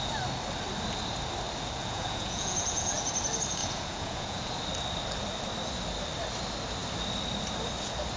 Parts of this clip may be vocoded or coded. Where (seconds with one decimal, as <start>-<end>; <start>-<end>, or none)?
1.8-3.0; 3.6-4.5